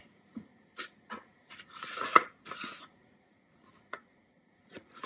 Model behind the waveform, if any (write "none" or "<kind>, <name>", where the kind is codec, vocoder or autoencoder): vocoder, Vocos